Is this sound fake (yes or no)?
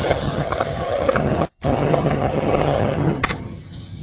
yes